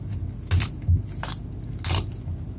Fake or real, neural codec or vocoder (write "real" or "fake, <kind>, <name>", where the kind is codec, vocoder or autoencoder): real